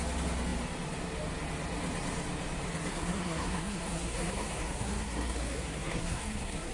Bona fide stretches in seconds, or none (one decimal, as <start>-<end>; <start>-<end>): 0.0-2.9